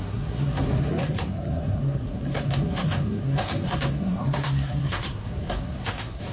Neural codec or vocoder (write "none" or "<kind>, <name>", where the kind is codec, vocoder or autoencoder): codec, SNAC